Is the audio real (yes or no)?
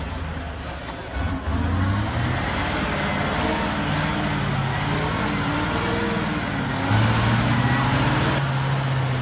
yes